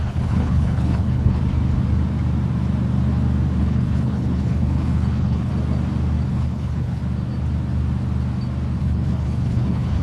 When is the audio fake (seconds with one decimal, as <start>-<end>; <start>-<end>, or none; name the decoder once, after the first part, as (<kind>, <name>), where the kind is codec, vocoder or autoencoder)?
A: 0.0-1.4 (codec, HILCodec); 3.6-5.5; 6.3-7.0; 8.8-10.0